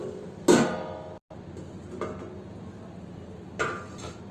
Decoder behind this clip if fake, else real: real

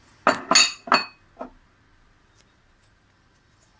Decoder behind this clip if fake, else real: real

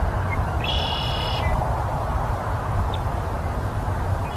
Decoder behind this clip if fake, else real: real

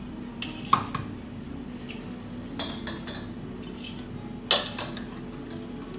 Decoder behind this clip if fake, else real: real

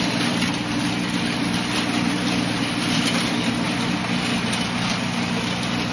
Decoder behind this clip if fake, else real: real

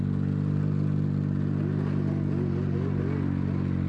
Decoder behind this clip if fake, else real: real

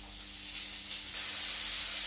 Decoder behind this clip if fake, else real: real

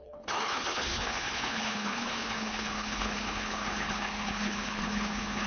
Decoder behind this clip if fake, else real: fake, codec, HILCodec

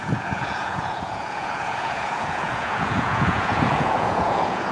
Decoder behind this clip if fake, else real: fake, vocoder, Vocos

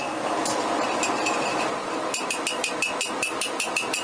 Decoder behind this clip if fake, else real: real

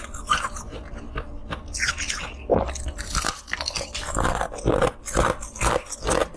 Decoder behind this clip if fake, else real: real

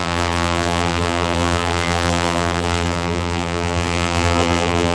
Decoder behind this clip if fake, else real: fake, vocoder, BigVGAN v2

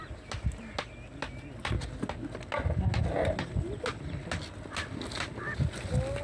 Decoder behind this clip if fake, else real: real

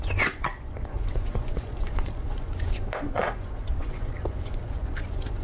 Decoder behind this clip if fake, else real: fake, vocoder, Vocos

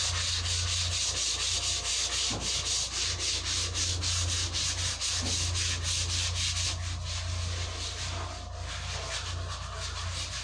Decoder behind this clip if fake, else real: real